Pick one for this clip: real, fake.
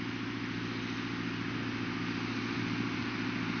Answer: real